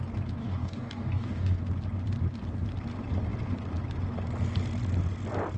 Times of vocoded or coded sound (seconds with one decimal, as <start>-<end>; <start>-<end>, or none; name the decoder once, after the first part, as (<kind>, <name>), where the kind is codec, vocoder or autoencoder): 0.4-1.6 (codec, DAC)